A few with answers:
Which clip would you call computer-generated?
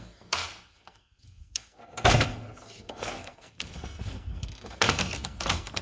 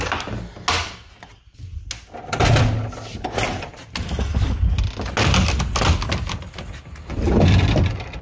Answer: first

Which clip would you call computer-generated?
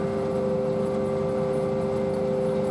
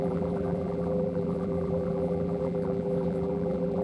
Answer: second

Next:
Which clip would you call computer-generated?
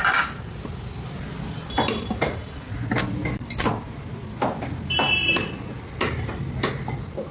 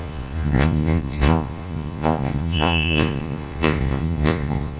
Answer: second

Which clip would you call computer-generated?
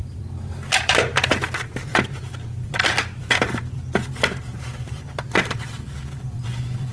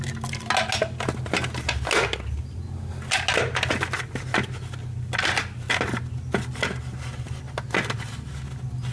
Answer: first